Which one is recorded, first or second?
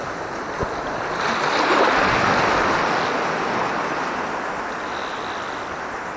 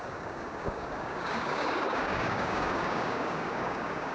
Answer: first